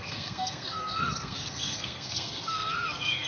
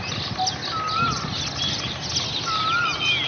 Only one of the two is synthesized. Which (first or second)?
first